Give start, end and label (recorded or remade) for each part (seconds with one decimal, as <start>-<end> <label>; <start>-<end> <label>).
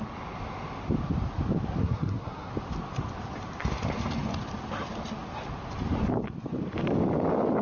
0.0-1.8 recorded; 1.8-2.5 remade; 2.5-7.6 recorded